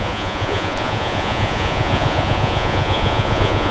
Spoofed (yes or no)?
yes